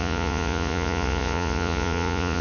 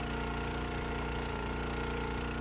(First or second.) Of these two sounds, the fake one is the first